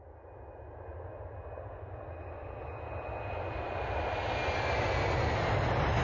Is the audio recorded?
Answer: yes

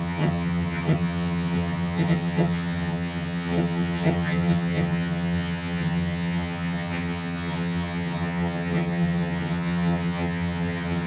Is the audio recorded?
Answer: no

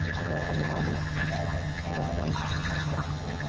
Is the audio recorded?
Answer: no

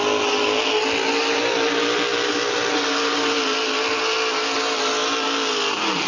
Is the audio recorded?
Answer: yes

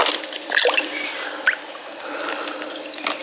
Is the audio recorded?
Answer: yes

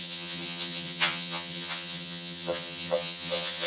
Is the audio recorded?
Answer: no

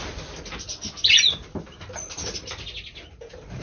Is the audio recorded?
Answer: yes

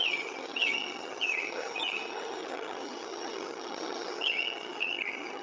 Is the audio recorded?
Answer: no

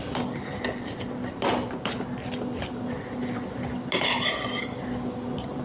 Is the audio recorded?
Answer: yes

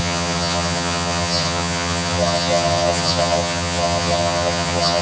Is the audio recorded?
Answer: no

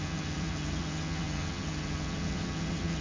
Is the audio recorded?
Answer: no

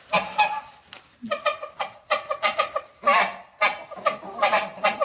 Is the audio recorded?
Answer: yes